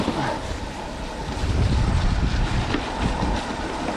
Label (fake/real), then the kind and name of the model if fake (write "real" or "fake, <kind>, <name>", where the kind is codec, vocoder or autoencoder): real